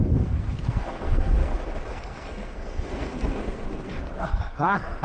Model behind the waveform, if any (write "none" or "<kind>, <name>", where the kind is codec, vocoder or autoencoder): codec, SNAC